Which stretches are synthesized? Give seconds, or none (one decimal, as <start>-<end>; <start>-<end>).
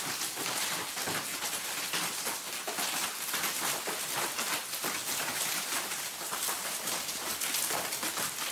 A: 1.3-1.8; 5.0-7.3